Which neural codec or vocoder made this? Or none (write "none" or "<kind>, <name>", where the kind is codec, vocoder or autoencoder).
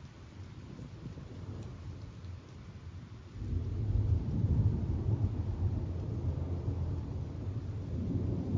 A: none